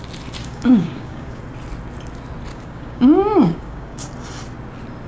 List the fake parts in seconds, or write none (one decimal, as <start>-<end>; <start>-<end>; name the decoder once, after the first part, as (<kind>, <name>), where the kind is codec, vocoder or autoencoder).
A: 0.4-1.4 (codec, DAC); 2.5-4.1